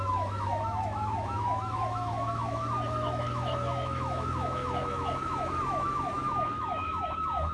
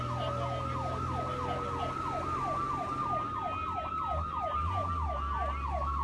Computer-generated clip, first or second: first